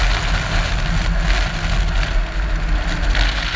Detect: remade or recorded recorded